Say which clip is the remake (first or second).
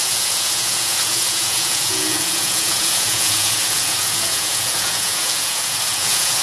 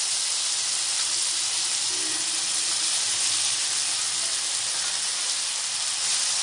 first